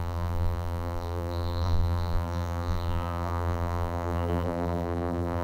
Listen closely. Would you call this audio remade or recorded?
remade